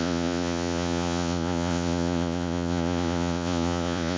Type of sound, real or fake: fake